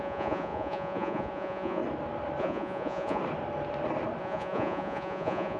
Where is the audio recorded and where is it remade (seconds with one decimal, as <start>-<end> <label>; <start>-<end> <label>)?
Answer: 0.0-1.8 remade; 1.8-2.4 recorded; 2.4-3.2 remade; 3.2-4.2 recorded; 4.2-5.6 remade